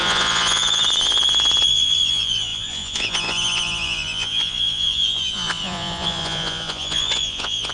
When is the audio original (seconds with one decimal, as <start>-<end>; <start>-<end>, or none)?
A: none